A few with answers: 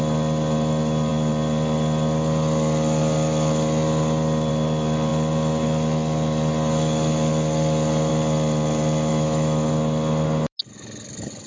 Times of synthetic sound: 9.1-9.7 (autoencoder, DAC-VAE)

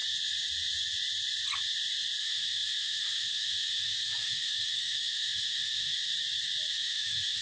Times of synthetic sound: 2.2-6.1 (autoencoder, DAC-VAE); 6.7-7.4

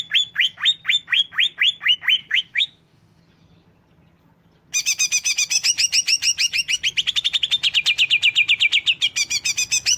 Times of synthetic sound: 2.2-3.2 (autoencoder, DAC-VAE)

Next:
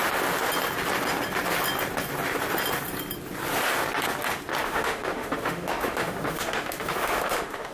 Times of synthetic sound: 4.6-7.7 (autoencoder, DAC-VAE)